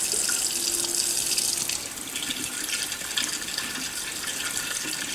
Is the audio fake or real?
real